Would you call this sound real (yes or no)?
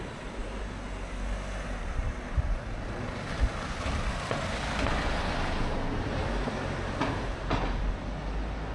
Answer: yes